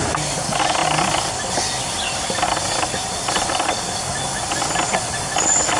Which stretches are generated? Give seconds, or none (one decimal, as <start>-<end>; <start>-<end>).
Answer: none